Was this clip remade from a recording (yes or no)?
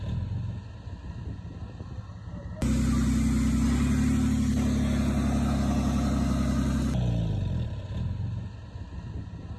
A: no